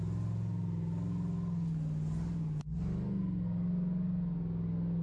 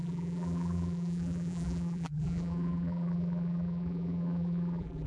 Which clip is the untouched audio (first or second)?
first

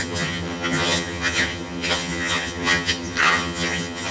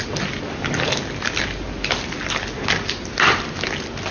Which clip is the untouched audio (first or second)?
second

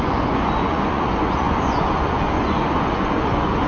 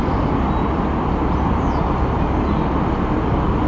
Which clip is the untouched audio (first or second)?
second